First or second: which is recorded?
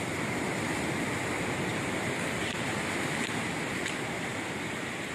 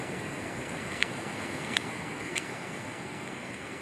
first